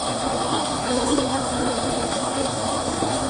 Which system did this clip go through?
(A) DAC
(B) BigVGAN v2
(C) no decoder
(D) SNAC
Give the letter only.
D